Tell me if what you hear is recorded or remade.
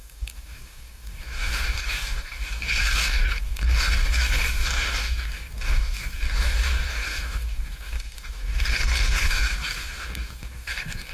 remade